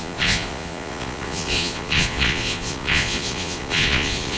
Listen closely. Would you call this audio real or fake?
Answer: fake